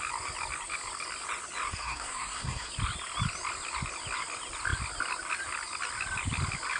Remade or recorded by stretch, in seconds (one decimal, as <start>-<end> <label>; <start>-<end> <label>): 0.0-1.7 recorded; 1.7-2.7 remade; 2.7-6.8 recorded